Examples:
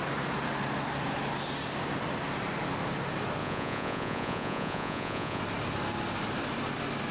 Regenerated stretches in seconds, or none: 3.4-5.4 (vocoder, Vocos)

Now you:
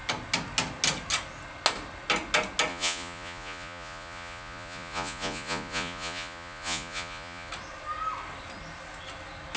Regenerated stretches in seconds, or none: 2.7-7.5 (vocoder, Vocos)

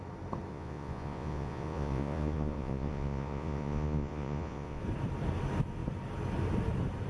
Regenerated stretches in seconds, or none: 0.5-4.8 (vocoder, Vocos)

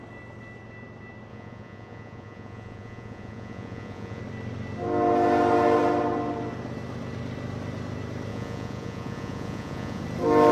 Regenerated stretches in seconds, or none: 1.3-4.2 (vocoder, Vocos); 8.3-10.0

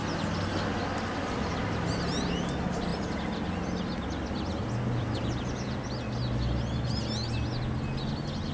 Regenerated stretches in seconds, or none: none

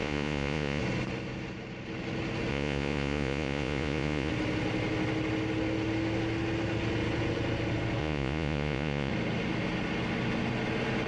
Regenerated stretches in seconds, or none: 0.0-0.8 (vocoder, Vocos); 2.5-4.3; 8.0-9.1

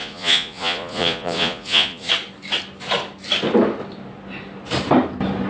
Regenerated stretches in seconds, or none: 0.0-2.1 (vocoder, Vocos)